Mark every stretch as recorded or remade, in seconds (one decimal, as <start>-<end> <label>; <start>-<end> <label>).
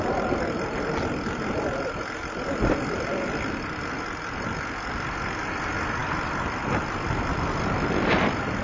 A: 0.0-8.6 recorded